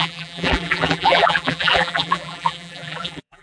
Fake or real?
fake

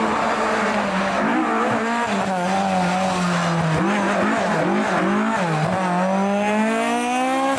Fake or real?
real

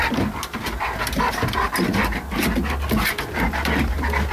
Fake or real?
real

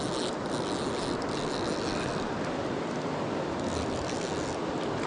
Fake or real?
real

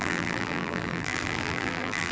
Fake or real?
fake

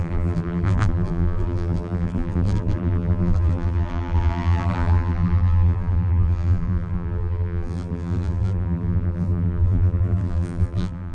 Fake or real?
fake